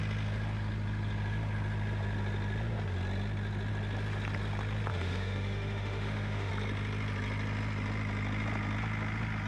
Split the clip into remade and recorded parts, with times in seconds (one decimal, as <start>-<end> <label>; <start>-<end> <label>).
0.0-4.9 recorded; 4.9-6.5 remade; 6.5-9.5 recorded